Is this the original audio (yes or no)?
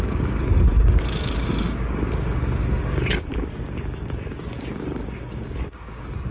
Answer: no